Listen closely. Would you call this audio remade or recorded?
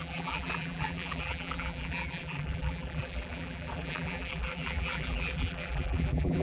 remade